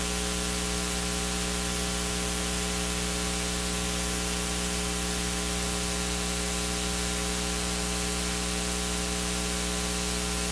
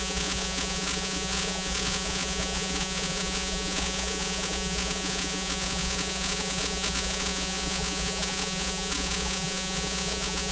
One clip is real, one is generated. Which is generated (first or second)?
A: second